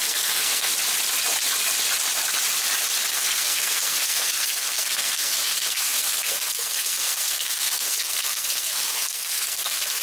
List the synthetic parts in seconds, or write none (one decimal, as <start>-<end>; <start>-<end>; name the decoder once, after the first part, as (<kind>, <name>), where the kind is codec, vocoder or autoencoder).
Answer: 0.0-0.7 (codec, SNAC); 3.1-10.0